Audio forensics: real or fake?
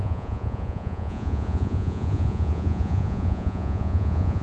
fake